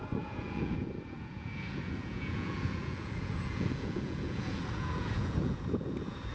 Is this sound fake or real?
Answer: fake